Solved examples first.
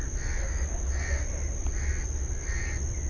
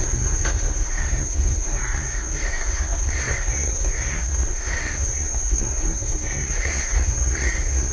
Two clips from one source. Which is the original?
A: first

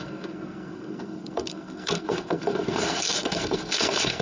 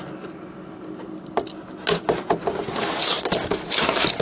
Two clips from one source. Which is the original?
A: second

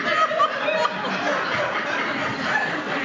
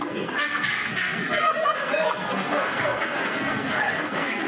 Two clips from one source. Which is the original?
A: first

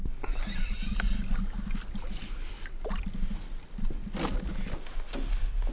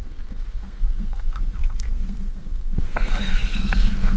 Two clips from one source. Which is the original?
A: first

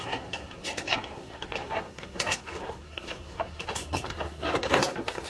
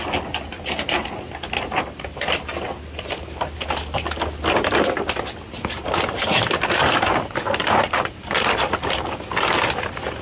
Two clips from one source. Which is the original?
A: second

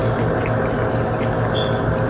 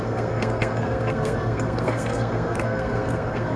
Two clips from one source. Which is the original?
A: first